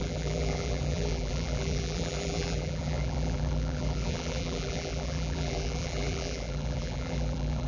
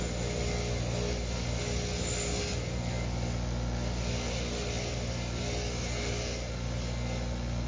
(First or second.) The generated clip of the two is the first